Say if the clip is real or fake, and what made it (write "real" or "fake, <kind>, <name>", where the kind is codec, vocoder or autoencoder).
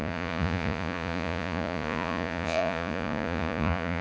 fake, vocoder, Vocos